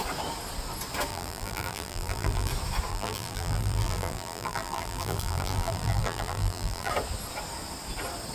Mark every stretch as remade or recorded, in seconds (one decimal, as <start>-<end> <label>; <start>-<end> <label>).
0.0-1.1 recorded; 1.1-2.5 remade; 2.5-2.9 recorded; 2.9-6.9 remade; 6.9-8.3 recorded

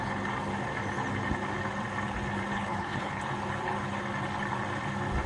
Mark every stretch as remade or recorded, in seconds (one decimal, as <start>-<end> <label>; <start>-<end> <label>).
0.0-2.5 recorded; 2.5-3.2 remade; 3.2-5.3 recorded